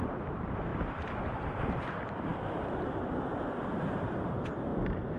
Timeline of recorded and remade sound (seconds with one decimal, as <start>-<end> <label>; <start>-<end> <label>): 0.0-0.7 remade; 0.7-1.6 recorded; 1.6-4.7 remade; 4.7-5.2 recorded

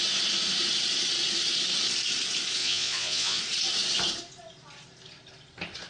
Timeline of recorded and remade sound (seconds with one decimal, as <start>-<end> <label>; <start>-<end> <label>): 0.0-2.6 recorded; 2.6-3.4 remade; 3.4-5.9 recorded

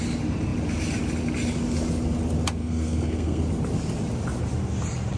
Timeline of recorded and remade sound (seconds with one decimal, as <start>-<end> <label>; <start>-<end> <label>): 0.0-2.6 recorded; 2.6-3.4 remade; 3.4-5.2 recorded

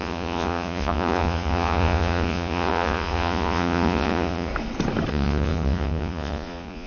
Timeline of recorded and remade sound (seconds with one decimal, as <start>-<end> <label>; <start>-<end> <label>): 0.0-4.5 remade; 4.5-5.1 recorded; 5.1-6.9 remade

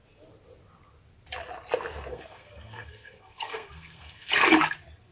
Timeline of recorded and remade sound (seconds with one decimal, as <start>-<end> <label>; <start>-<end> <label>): 0.0-2.1 recorded; 2.1-4.3 remade; 4.3-5.1 recorded

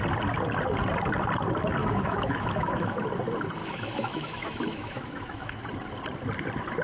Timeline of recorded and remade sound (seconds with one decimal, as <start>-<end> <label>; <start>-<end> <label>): 0.0-1.8 recorded; 1.8-3.0 remade; 3.0-3.6 recorded; 3.6-5.6 remade; 5.6-6.8 recorded

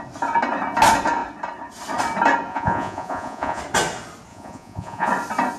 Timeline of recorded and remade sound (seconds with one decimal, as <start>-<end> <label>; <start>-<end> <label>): 0.0-2.5 recorded; 2.5-3.6 remade; 3.6-4.3 recorded; 4.3-5.1 remade; 5.1-5.6 recorded